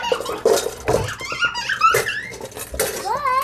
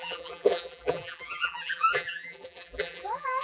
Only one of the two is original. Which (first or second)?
first